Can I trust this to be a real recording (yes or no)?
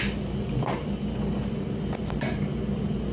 yes